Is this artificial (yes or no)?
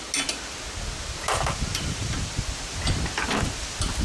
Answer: no